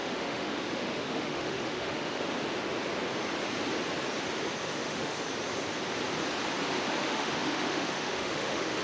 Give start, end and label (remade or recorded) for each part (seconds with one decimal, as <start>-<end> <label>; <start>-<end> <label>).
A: 0.0-2.2 remade; 2.2-4.6 recorded; 4.6-5.2 remade; 5.2-7.0 recorded; 7.0-8.8 remade